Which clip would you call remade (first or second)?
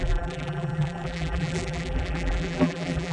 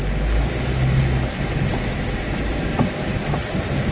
first